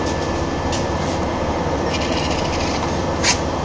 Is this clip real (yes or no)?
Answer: yes